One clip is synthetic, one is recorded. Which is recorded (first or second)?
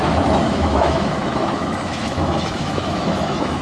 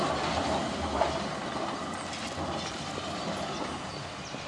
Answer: second